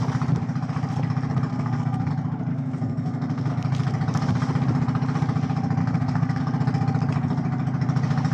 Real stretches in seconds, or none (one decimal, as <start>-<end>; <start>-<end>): 0.0-1.5; 2.1-2.5; 3.5-5.8; 6.4-8.3